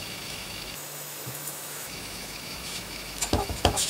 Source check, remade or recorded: remade